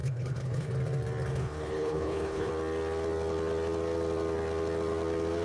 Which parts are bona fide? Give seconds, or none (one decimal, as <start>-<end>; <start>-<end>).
0.7-1.3; 2.5-5.4